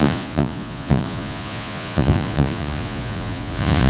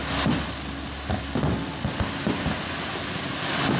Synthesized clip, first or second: first